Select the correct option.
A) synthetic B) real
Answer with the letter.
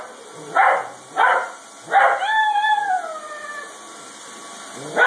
B